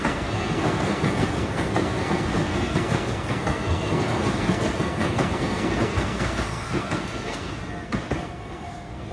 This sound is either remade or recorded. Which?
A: remade